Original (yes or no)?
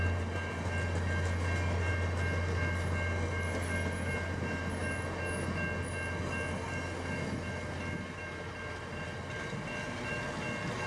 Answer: yes